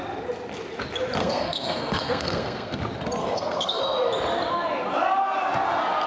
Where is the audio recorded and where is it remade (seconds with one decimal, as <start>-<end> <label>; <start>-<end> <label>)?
0.0-1.2 recorded; 1.2-2.8 remade; 2.8-3.2 recorded; 3.2-3.8 remade; 3.8-6.1 recorded